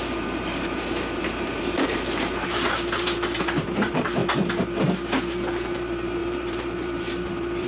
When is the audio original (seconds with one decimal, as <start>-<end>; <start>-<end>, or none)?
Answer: 4.2-5.3